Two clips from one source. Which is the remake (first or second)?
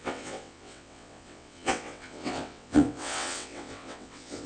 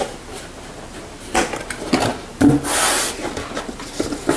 first